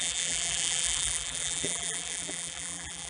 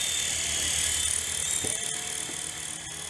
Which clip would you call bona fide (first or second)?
second